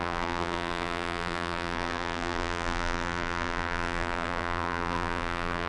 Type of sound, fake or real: fake